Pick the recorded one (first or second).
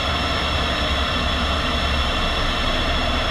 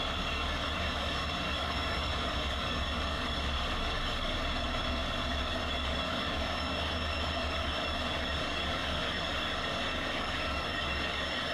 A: first